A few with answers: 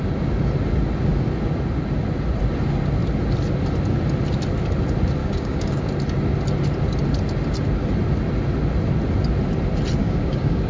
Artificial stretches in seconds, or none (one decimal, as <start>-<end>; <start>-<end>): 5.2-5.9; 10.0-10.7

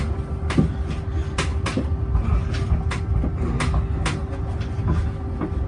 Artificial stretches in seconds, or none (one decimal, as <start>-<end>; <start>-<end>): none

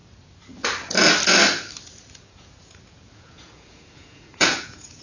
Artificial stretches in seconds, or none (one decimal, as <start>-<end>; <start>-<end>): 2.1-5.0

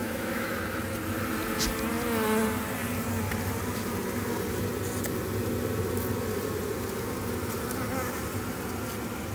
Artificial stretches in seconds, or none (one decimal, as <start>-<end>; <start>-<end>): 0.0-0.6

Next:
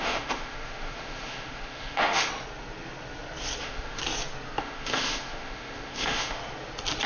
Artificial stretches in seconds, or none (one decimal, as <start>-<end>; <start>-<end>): 0.0-2.3; 3.6-4.0; 4.6-6.4

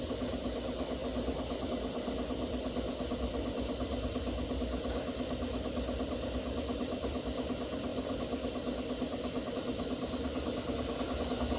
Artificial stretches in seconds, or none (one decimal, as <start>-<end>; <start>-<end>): none